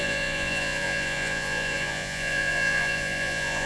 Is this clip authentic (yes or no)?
no